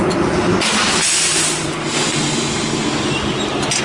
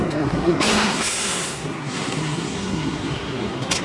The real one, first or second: first